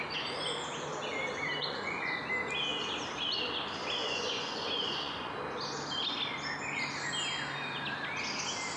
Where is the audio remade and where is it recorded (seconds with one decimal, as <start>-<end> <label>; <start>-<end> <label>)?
0.0-1.6 recorded; 1.6-2.2 remade; 2.2-4.0 recorded; 4.0-5.3 remade; 5.3-8.8 recorded